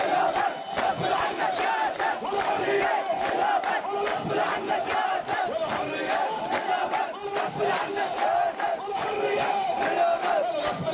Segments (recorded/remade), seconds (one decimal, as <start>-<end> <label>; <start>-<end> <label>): 0.0-10.9 recorded